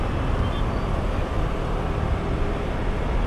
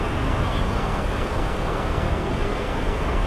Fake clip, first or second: second